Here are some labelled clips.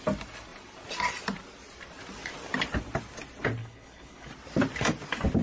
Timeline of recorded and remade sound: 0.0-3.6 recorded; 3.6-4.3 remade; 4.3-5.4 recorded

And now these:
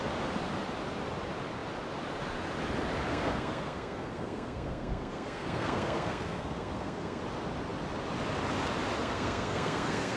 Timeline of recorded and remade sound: 0.0-3.1 recorded; 3.1-7.2 remade; 7.2-9.0 recorded; 9.0-10.2 remade